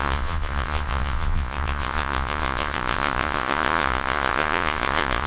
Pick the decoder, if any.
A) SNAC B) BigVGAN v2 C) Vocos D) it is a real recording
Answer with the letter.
C